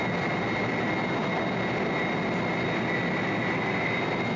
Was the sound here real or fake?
real